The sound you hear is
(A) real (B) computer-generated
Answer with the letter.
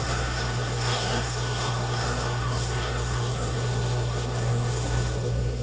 B